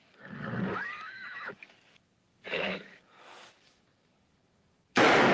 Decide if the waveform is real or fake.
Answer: fake